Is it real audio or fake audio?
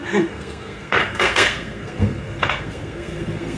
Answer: fake